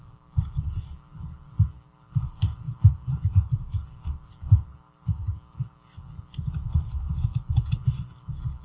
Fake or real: real